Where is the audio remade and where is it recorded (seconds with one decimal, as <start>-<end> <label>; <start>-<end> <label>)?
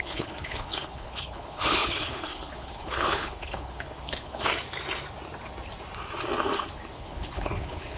0.0-4.5 remade; 4.5-6.9 recorded; 6.9-8.0 remade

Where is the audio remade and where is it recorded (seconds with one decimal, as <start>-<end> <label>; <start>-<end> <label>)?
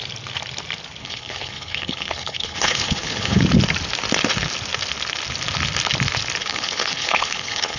0.0-1.0 recorded; 1.0-3.4 remade; 3.4-6.4 recorded; 6.4-7.8 remade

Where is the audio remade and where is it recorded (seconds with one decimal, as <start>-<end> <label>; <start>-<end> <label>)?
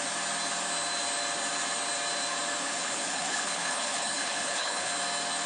0.0-2.6 recorded; 2.6-4.9 remade; 4.9-5.5 recorded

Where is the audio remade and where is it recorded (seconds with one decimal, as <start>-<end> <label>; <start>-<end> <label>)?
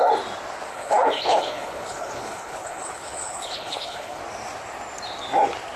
0.0-0.7 recorded; 0.7-4.2 remade; 4.2-5.8 recorded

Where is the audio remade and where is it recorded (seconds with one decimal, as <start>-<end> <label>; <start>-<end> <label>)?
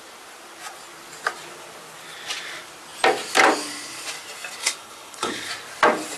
0.0-4.6 recorded; 4.6-5.5 remade; 5.5-6.2 recorded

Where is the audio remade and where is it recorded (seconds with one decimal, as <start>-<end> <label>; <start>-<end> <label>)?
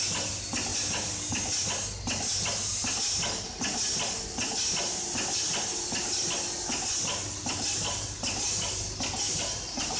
0.0-10.0 recorded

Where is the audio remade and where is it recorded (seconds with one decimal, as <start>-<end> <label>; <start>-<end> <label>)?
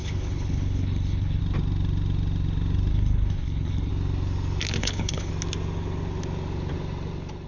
0.0-1.4 remade; 1.4-2.9 recorded; 2.9-3.9 remade; 3.9-4.8 recorded; 4.8-5.3 remade; 5.3-7.5 recorded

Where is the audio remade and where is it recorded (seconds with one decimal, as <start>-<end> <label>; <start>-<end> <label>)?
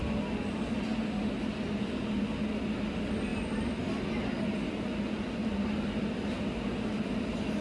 0.0-7.6 recorded